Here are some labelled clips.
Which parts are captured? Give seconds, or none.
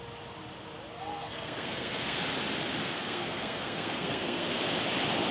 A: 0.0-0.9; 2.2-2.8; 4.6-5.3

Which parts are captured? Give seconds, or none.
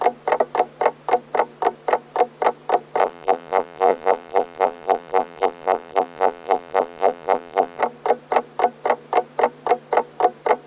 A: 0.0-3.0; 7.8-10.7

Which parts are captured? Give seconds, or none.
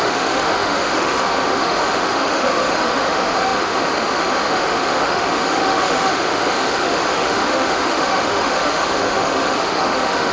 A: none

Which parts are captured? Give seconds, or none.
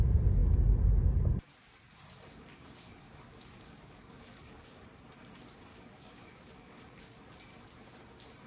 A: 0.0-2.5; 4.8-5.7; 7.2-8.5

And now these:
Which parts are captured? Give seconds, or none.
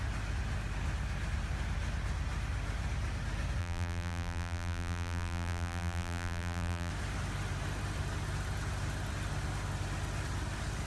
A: 0.0-3.6; 6.9-10.9